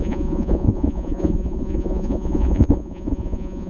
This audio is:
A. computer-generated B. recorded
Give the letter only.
A